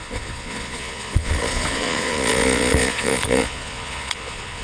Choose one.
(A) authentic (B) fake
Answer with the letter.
B